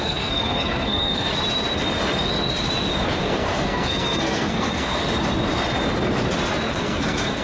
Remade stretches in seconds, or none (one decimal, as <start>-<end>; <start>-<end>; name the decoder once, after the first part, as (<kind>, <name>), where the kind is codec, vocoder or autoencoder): 0.0-1.3 (codec, SNAC); 3.2-5.0; 6.7-7.4